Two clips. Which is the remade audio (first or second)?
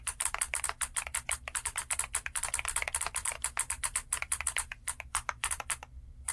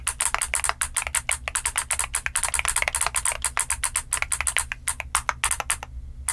first